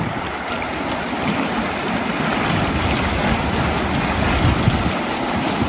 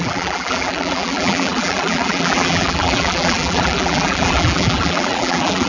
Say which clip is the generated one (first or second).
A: second